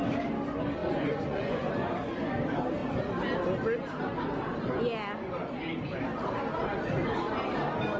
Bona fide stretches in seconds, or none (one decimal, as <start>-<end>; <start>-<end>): 0.0-0.8; 1.7-8.0